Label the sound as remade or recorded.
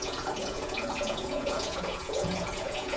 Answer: remade